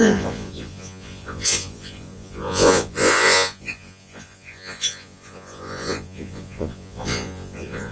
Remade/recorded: remade